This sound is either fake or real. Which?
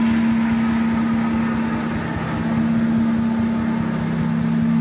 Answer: real